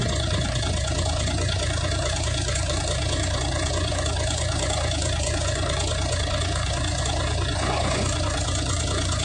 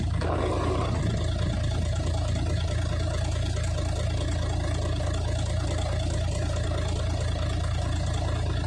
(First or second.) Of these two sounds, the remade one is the first